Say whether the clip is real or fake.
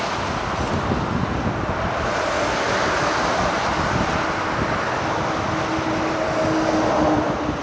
real